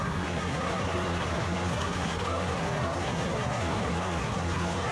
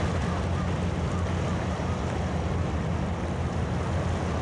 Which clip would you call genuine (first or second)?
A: second